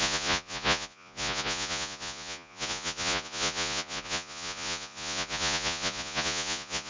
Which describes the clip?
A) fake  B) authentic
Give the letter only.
A